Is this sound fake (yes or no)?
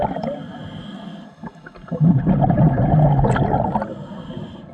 no